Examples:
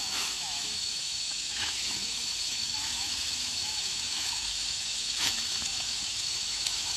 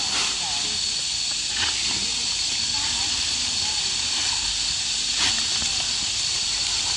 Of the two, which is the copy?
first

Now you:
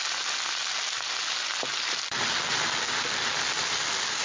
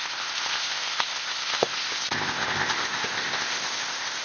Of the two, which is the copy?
second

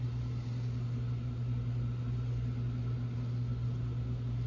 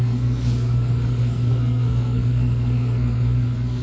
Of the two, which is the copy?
second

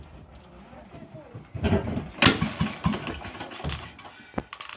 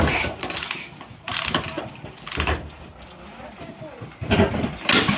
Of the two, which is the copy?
second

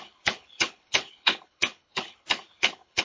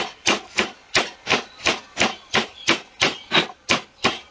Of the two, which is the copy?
first